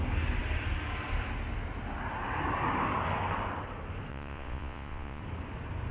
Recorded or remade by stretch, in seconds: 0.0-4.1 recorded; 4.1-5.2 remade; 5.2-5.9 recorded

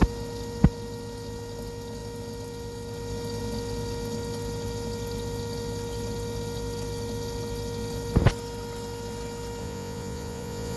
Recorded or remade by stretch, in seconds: 0.0-9.6 recorded; 9.6-10.8 remade